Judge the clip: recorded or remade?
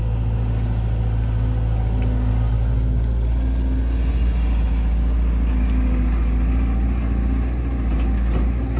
recorded